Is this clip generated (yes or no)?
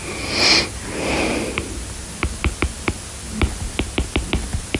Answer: no